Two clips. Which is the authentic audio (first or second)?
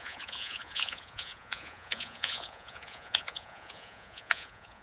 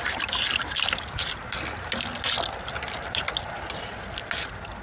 second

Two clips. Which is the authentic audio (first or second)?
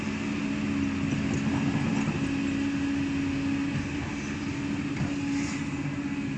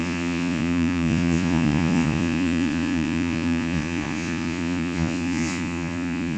first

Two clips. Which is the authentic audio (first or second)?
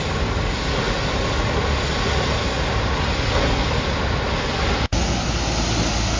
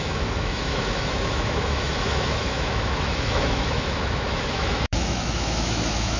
first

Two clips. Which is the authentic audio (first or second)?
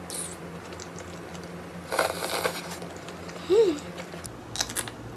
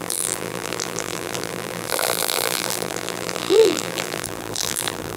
first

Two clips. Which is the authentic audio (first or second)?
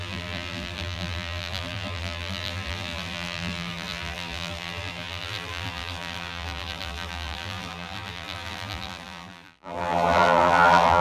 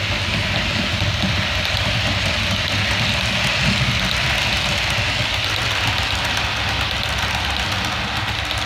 second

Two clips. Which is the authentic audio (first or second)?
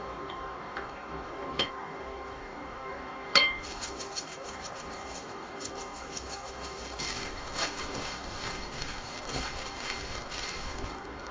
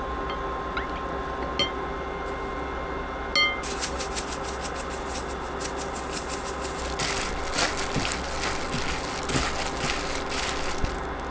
second